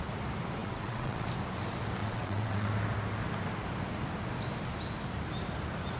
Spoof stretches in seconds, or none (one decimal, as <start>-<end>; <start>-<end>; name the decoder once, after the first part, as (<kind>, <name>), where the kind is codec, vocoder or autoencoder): 0.6-1.3 (vocoder, WaveNeXt); 2.0-2.7